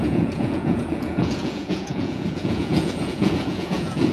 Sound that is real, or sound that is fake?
fake